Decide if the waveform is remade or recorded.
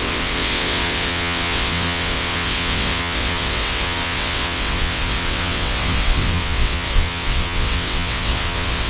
remade